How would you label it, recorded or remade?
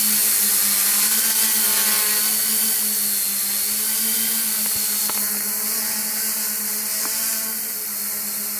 recorded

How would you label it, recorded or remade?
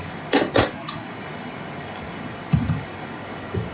remade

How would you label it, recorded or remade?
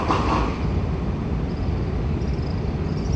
recorded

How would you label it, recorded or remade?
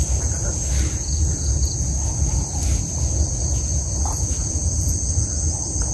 recorded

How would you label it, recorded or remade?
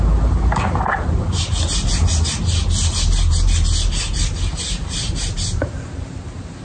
recorded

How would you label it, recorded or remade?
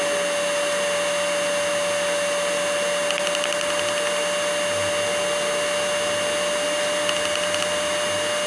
recorded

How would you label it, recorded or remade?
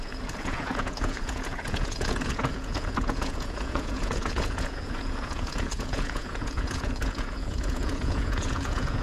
remade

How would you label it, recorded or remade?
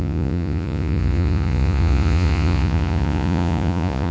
remade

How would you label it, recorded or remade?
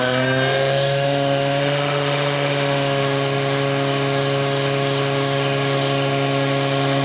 remade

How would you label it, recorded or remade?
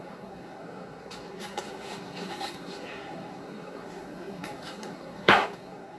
remade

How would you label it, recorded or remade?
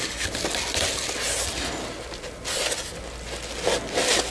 recorded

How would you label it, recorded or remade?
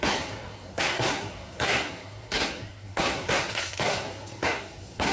remade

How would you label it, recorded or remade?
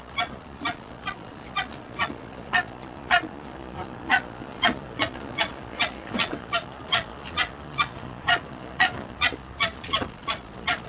remade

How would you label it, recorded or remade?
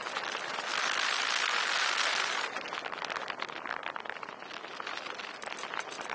recorded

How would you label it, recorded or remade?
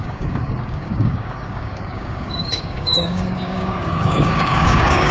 remade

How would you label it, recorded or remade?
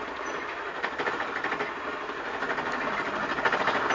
recorded